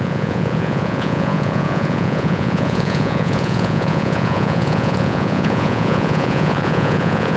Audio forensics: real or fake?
fake